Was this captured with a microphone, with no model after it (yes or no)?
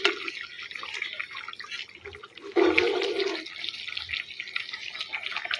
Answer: yes